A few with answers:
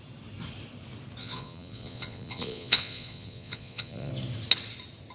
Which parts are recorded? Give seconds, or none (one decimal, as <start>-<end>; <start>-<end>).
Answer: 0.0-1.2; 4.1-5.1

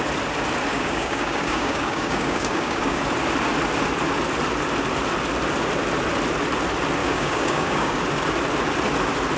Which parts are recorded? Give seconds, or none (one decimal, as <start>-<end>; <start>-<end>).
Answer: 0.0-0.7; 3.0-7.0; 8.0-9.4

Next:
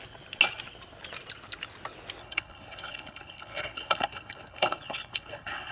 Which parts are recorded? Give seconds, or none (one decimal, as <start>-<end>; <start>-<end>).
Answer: 0.0-2.2

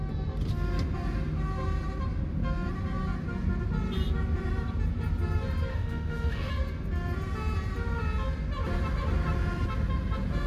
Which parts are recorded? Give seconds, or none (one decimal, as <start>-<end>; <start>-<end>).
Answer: 0.0-5.7; 6.5-10.5

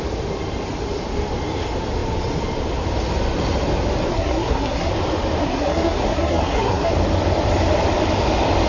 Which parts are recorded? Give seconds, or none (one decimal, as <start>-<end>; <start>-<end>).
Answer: 0.0-4.1; 4.9-5.4; 6.9-8.7

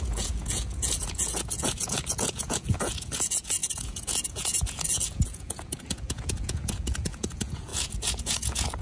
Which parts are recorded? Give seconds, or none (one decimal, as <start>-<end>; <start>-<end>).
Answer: none